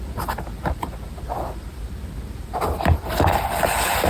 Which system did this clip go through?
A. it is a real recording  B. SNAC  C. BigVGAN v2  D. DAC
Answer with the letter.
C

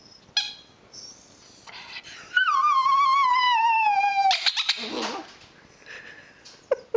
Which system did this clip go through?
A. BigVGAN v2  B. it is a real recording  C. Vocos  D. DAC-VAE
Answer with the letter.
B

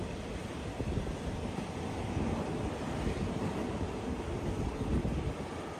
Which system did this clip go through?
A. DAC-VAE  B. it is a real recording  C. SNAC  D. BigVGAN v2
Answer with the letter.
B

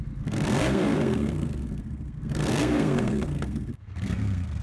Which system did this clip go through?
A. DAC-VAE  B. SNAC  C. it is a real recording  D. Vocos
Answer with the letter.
B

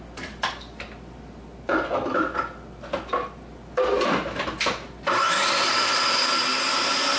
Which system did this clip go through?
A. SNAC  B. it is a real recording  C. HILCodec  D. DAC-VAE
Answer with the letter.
B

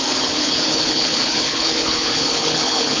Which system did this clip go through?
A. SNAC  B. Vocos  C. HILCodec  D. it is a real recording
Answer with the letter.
C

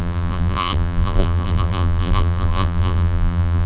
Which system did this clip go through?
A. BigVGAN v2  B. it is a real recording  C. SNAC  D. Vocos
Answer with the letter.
A